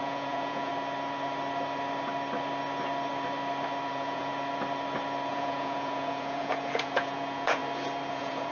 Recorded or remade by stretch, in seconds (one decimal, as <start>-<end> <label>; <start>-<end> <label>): 0.0-0.7 remade; 0.7-3.9 recorded; 3.9-4.3 remade; 4.3-5.3 recorded; 5.3-7.6 remade; 7.6-8.1 recorded; 8.1-8.5 remade